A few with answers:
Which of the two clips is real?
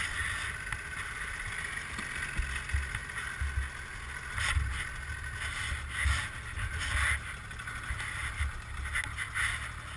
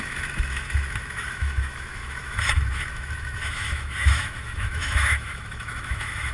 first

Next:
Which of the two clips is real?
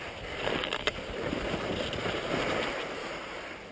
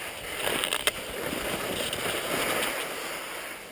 second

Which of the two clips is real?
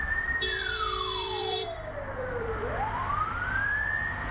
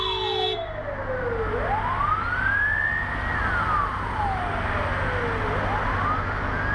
second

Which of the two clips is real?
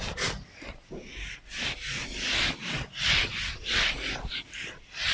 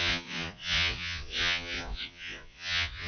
first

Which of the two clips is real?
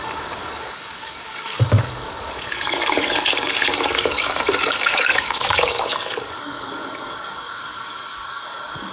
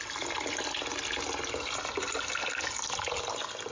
second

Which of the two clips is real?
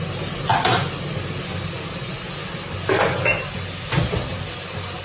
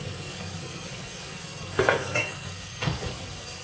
first